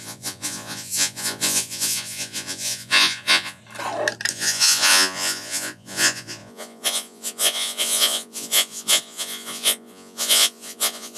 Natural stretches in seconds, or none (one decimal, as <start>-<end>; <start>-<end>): 3.6-4.3

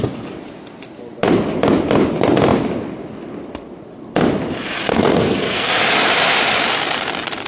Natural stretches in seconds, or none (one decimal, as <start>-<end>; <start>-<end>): 0.0-4.9; 5.7-7.5

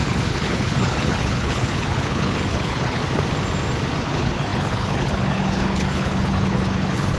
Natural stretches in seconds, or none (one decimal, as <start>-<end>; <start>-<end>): 3.0-4.0

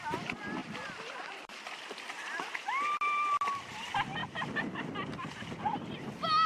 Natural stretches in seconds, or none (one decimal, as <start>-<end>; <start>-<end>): 0.0-6.5

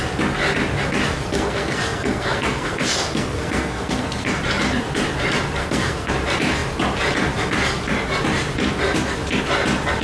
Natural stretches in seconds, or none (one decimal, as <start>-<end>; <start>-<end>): 0.0-1.1; 4.4-5.6; 6.1-10.0

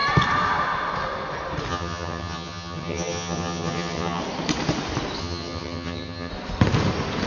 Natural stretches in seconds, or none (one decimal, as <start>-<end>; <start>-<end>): 0.0-1.7; 4.2-5.2; 6.3-7.3